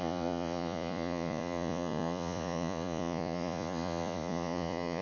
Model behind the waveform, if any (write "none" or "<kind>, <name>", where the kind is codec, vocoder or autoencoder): vocoder, Vocos